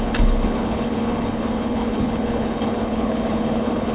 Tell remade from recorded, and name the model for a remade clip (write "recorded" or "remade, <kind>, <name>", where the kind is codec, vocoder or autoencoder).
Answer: remade, codec, HILCodec